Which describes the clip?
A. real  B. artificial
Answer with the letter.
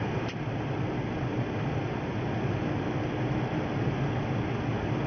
A